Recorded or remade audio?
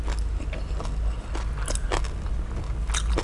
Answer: recorded